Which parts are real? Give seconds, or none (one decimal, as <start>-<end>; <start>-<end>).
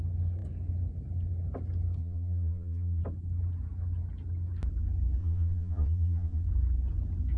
0.0-2.0; 3.0-5.2; 6.4-7.4